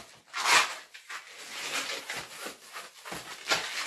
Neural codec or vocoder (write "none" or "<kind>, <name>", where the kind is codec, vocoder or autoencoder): none